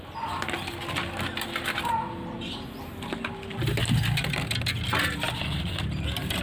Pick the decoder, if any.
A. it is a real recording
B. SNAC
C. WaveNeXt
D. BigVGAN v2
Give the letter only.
D